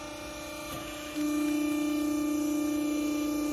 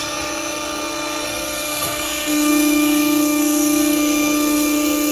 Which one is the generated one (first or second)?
second